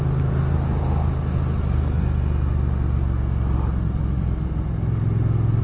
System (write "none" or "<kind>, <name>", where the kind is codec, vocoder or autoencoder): none